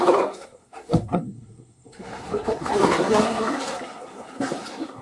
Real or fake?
fake